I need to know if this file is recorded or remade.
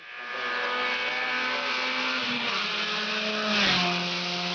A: recorded